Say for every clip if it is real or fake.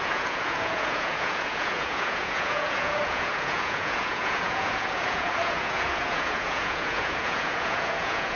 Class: fake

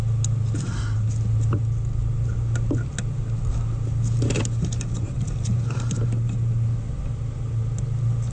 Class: real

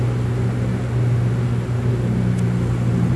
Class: real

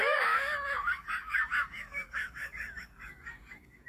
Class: fake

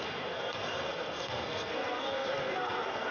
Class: fake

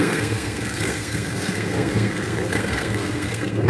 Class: fake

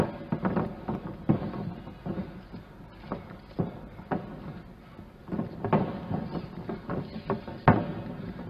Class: real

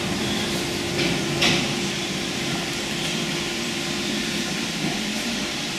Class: fake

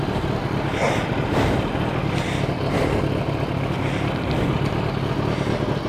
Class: real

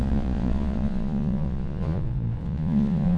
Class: fake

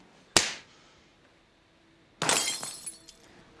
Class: real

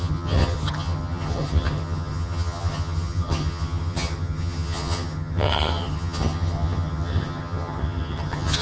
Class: fake